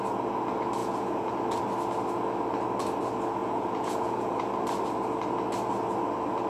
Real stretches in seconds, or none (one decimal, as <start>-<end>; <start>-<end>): 0.0-0.8; 1.3-3.4; 4.4-6.5